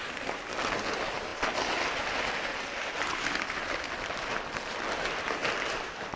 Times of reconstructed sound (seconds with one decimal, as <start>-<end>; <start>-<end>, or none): none